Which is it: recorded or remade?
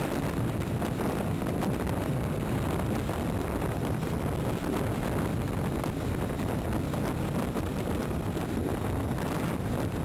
recorded